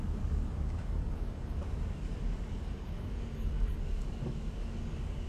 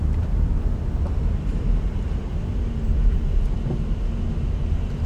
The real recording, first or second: second